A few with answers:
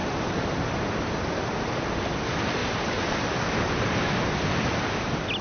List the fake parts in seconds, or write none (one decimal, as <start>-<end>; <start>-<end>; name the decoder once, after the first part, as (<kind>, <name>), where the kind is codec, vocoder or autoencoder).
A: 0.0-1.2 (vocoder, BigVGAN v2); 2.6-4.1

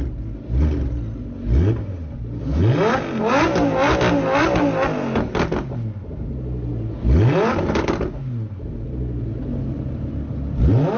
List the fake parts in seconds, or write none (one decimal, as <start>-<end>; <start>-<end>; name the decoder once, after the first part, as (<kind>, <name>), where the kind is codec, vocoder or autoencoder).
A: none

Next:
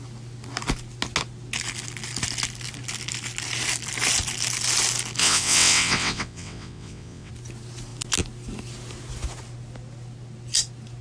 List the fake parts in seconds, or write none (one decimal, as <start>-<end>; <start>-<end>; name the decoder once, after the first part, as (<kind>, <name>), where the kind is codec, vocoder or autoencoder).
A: 5.2-7.3 (vocoder, WaveNeXt)

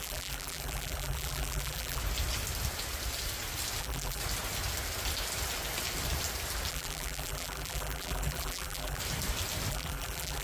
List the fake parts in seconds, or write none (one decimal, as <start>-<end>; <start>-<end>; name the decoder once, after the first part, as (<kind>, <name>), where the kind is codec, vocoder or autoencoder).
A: 0.0-2.0 (vocoder, BigVGAN v2); 3.8-4.2; 6.7-9.0; 9.7-10.4

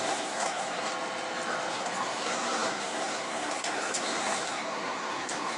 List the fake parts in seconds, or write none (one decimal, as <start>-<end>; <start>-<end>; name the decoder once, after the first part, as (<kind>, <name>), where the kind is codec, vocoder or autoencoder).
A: 0.0-0.9 (codec, SNAC); 1.7-5.6

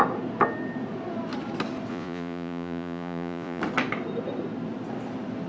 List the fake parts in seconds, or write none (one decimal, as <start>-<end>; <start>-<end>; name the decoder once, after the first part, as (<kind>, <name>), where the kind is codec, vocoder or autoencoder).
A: 1.9-3.6 (vocoder, Vocos)